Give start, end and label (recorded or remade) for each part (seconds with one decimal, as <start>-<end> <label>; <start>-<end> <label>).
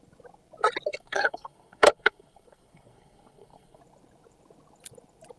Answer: 0.0-0.9 recorded; 0.9-3.8 remade; 3.8-5.4 recorded